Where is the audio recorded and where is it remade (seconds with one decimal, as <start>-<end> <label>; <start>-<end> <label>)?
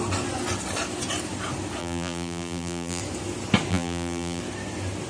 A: 0.0-1.8 recorded; 1.8-3.0 remade; 3.0-3.7 recorded; 3.7-4.4 remade; 4.4-5.1 recorded